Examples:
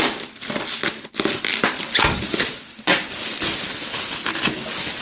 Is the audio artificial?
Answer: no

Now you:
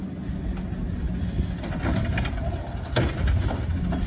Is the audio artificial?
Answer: no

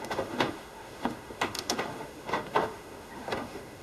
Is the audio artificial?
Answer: yes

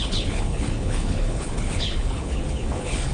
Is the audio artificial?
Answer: yes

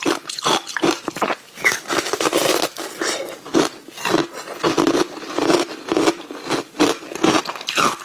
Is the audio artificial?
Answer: no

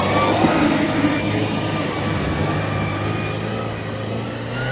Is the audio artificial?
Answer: no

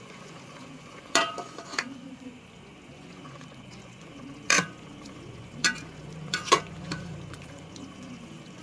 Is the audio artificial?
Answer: yes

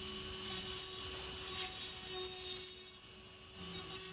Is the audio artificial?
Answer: no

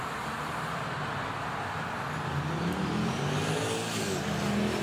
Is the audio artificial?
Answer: no